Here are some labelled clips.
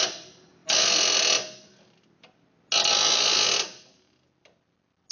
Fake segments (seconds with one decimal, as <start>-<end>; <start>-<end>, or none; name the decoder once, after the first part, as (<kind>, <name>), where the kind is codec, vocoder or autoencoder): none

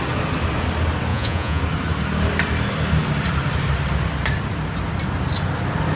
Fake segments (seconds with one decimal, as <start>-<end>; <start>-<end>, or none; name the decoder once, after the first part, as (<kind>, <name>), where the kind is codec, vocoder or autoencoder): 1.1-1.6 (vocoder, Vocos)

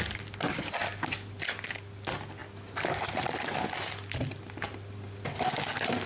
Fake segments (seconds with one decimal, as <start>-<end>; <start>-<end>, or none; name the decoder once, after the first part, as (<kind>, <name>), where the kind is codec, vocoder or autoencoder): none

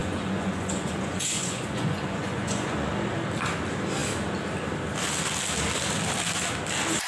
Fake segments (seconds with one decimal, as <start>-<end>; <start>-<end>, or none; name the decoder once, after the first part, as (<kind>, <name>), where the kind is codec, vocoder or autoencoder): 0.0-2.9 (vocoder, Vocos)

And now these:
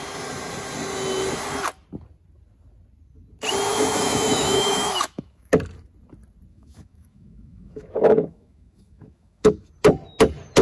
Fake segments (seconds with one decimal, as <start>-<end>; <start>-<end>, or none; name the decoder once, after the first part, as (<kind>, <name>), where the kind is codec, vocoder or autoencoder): 3.7-5.5 (autoencoder, DAC-VAE); 6.5-9.7

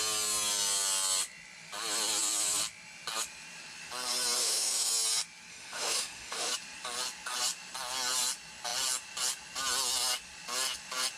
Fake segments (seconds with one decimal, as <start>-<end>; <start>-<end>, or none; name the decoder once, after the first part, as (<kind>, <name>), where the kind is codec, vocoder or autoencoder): 4.4-4.9 (autoencoder, DAC-VAE); 5.5-6.5

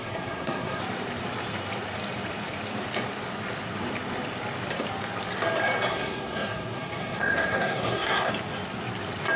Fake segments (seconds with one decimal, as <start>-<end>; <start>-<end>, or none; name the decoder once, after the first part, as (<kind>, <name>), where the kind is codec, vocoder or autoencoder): 0.0-0.8 (codec, SNAC); 5.9-8.3